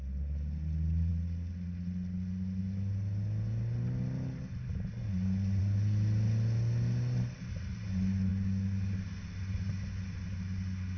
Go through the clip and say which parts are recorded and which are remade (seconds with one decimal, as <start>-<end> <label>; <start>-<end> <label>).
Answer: 0.0-11.0 recorded